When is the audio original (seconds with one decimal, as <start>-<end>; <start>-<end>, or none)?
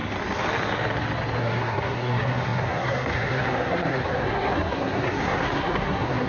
0.0-1.4